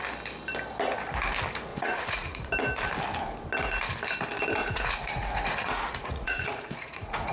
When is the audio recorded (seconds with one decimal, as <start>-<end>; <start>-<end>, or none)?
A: 0.0-1.7; 2.5-4.6